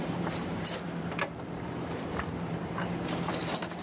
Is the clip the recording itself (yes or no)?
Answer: no